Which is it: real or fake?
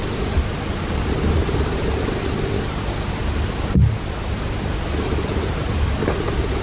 real